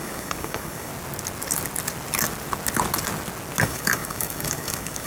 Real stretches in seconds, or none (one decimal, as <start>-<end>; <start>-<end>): 0.9-3.6